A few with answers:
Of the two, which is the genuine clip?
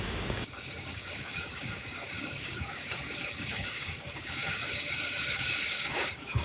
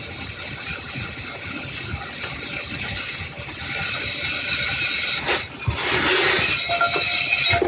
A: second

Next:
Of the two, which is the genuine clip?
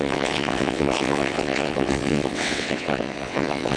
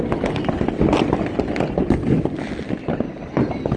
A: second